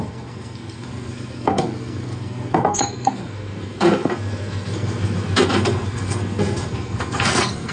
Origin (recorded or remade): remade